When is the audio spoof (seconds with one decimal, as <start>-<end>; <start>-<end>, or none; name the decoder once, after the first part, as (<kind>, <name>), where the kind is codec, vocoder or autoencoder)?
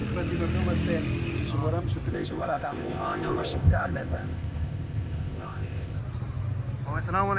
2.1-6.0 (codec, ZipCodec)